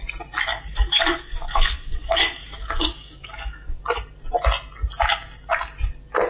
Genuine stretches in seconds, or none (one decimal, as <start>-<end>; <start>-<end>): 0.0-0.5; 3.8-6.3